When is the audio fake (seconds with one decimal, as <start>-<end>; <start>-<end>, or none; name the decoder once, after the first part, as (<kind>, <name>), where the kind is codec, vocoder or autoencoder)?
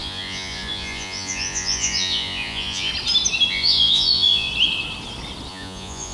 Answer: 0.0-2.9 (vocoder, Vocos); 3.5-4.5; 5.5-6.1